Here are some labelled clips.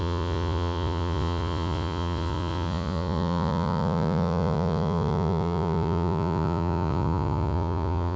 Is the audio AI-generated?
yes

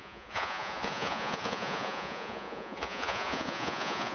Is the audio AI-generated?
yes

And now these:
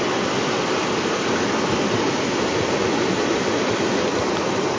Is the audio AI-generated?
no